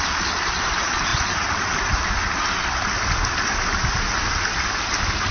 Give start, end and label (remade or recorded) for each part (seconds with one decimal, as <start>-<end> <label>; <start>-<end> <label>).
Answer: 0.0-5.3 recorded